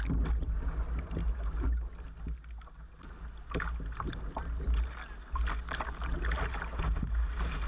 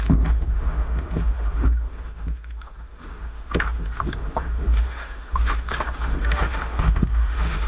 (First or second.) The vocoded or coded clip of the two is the second